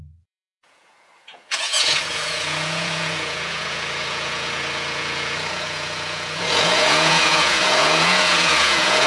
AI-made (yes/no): yes